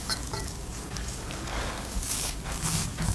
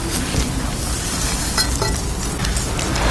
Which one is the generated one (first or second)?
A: first